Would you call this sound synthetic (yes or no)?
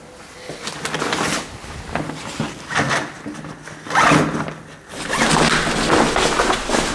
no